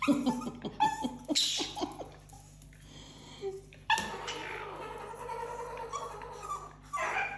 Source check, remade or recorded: recorded